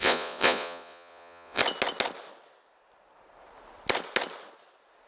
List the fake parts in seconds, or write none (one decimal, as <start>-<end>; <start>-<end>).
0.0-1.6